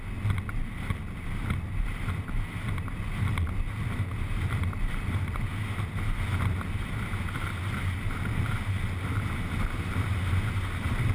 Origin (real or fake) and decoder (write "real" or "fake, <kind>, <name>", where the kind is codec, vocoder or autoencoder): real